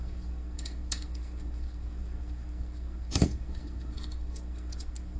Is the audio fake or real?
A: fake